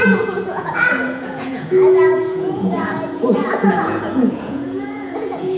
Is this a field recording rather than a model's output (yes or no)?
no